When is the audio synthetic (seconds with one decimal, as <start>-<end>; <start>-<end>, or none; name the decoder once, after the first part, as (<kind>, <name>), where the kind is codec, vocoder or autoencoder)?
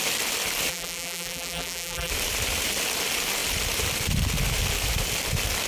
0.7-2.1 (vocoder, BigVGAN v2)